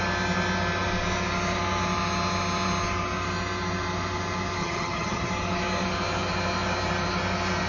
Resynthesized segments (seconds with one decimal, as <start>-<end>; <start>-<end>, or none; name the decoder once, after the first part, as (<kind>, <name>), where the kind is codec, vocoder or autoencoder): 4.6-5.3 (vocoder, HiFi-GAN)